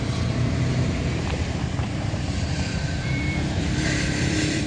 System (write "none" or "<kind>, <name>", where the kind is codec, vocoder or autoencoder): vocoder, BigVGAN v2